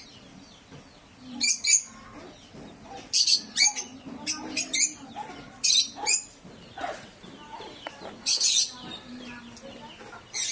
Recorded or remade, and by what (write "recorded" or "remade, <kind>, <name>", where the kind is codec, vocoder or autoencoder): recorded